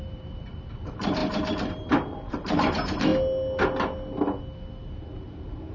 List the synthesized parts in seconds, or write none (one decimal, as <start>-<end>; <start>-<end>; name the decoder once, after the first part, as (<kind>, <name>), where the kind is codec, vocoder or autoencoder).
0.0-3.1 (vocoder, BigVGAN v2)